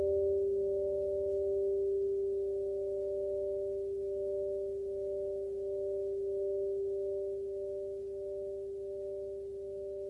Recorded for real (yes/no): yes